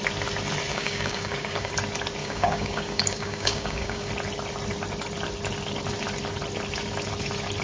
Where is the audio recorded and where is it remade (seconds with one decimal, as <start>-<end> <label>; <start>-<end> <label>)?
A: 0.0-0.7 recorded; 0.7-1.7 remade; 1.7-2.2 recorded; 2.2-4.1 remade; 4.1-7.6 recorded